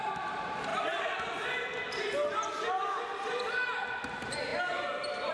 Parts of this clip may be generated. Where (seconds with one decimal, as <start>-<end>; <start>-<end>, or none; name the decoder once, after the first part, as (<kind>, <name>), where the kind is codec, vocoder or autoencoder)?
none